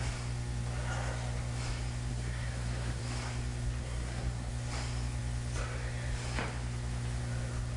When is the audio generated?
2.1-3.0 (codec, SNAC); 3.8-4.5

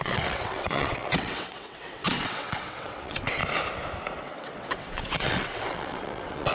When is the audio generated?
0.0-3.4 (vocoder, WaveNeXt); 4.2-6.5